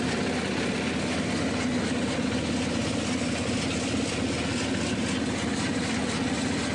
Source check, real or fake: real